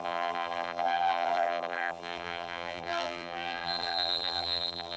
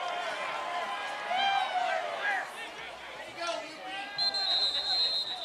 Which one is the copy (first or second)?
first